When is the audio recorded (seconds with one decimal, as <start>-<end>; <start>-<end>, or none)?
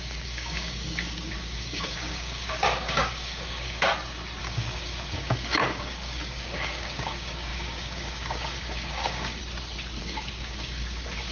3.9-4.4; 9.4-10.0